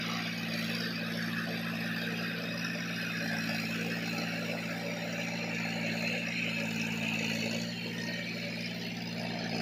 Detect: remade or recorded recorded